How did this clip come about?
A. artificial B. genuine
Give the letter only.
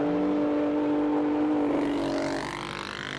B